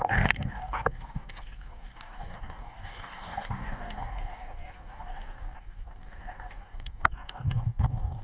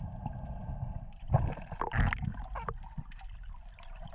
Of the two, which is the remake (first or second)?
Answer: first